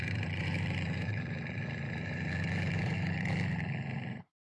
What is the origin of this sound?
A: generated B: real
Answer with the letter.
A